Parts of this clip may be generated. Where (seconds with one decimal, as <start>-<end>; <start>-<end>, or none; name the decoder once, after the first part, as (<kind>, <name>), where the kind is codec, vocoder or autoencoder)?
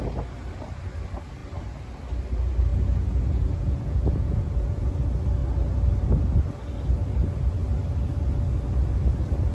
2.7-4.9 (vocoder, Vocos)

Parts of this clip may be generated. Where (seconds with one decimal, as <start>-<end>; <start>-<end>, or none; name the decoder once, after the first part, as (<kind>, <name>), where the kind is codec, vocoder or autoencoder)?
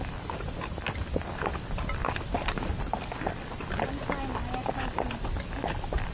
none